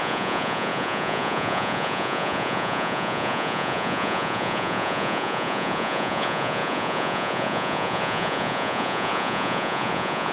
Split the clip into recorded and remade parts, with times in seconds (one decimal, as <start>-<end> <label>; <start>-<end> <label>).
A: 0.0-10.3 remade